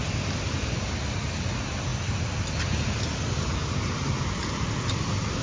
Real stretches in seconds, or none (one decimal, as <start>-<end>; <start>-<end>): 0.0-5.4